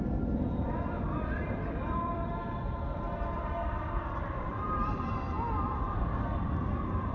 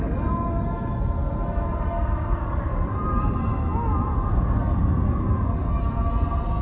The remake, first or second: first